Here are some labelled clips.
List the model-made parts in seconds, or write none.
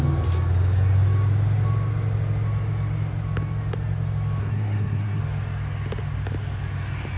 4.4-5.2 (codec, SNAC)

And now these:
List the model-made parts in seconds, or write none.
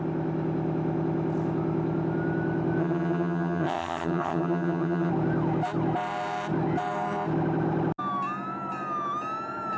2.8-5.1 (vocoder, HiFi-GAN)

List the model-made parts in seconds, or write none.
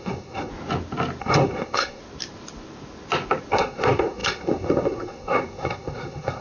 0.0-0.5 (codec, SNAC); 1.2-2.0; 3.5-6.4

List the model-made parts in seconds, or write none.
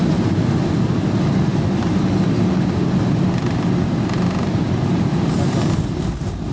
none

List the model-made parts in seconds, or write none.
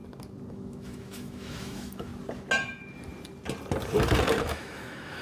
0.5-2.1 (autoencoder, DAC-VAE); 4.4-5.2